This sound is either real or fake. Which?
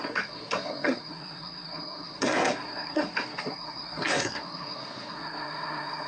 fake